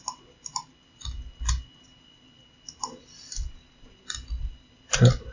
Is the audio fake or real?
real